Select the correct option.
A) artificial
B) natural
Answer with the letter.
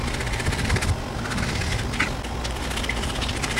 B